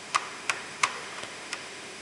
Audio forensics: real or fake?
fake